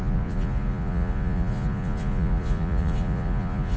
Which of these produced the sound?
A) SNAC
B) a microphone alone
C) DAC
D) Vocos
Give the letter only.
D